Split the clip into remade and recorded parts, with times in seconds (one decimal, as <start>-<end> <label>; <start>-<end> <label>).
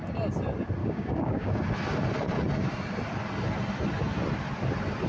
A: 0.0-0.8 recorded; 0.8-1.5 remade; 1.5-5.1 recorded